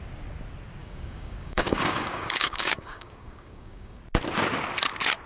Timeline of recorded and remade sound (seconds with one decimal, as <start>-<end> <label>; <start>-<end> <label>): 0.0-0.8 recorded; 0.8-4.0 remade; 4.0-5.3 recorded